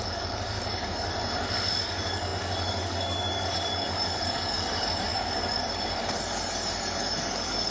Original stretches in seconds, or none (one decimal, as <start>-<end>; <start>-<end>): 1.1-1.8